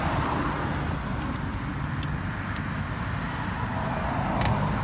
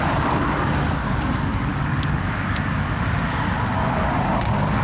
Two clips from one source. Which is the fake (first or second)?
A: second